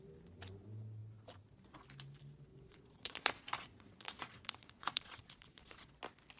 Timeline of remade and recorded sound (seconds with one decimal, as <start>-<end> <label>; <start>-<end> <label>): 0.0-2.5 recorded; 2.5-5.9 remade; 5.9-6.4 recorded